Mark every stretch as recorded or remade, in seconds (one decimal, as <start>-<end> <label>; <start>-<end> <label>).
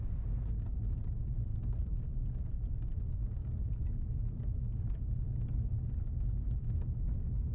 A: 0.0-7.5 recorded